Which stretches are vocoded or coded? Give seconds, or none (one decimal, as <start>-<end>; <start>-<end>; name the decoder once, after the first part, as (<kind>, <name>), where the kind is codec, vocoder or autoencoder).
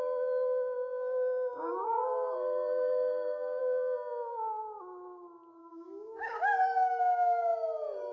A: 1.7-3.6 (codec, DAC); 5.6-7.0